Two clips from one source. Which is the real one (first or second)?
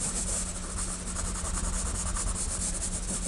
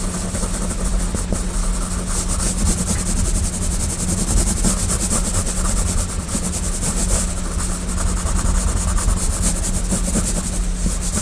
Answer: first